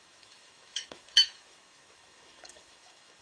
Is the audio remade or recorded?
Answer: remade